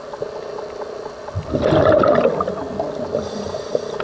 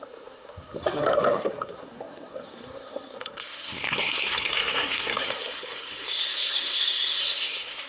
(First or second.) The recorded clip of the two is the first